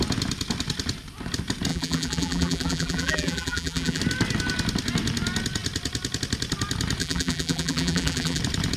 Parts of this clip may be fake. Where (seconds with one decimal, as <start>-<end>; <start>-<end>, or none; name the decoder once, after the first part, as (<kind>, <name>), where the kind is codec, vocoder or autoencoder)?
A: 1.7-4.0 (vocoder, BigVGAN v2); 7.0-8.4